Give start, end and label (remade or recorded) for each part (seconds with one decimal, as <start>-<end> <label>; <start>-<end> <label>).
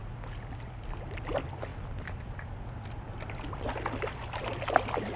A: 0.0-1.7 recorded; 1.7-4.5 remade; 4.5-5.2 recorded